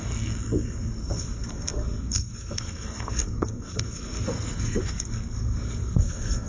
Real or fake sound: fake